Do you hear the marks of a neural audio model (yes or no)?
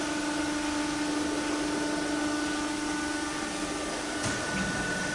no